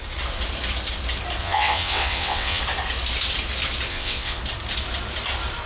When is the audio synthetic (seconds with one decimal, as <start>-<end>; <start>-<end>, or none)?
1.4-2.6; 3.9-4.4